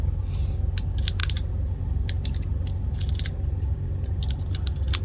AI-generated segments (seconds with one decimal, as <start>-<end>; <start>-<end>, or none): none